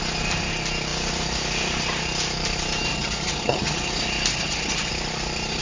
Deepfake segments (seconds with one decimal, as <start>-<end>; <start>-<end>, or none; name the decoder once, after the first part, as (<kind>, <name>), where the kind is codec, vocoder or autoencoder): 2.9-3.9 (vocoder, HiFi-GAN); 4.3-4.9